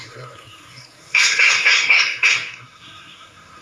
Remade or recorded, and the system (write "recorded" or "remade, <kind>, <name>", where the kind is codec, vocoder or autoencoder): remade, codec, SNAC